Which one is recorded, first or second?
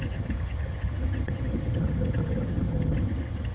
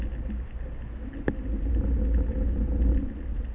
second